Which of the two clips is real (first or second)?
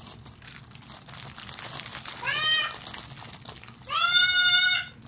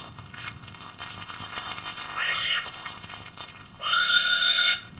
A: first